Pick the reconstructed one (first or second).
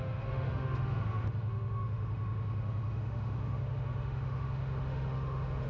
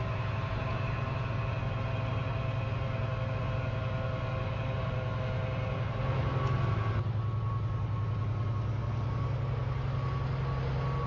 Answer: first